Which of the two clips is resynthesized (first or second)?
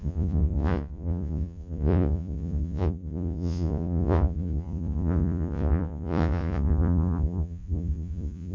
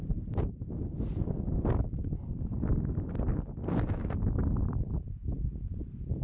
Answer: first